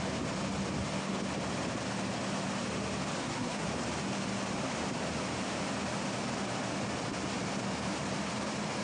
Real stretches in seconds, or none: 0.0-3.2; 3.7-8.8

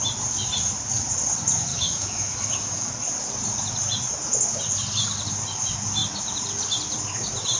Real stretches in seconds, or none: 0.0-1.7; 2.9-7.6

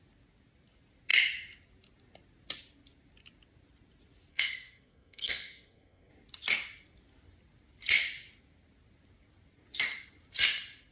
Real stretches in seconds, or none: 0.0-4.3; 6.1-10.9

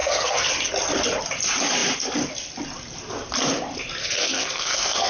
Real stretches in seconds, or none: 0.5-4.0

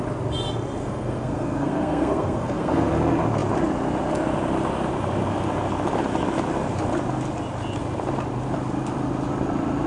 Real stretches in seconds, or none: 0.0-0.8; 2.9-9.9

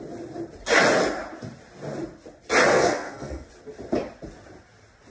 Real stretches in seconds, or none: 0.0-2.7; 3.5-5.1

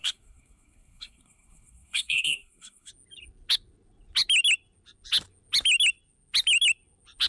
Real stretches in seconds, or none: 2.9-7.3

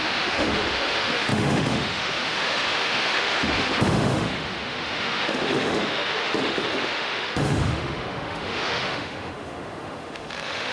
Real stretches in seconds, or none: none